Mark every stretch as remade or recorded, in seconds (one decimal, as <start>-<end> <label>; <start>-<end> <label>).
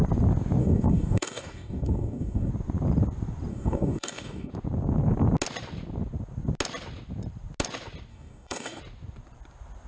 0.0-0.6 recorded; 0.6-2.5 remade; 2.5-3.5 recorded; 3.5-4.5 remade; 4.5-8.1 recorded; 8.1-8.8 remade; 8.8-9.9 recorded